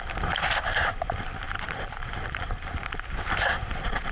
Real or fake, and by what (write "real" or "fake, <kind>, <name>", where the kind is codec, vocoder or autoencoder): fake, vocoder, BigVGAN v2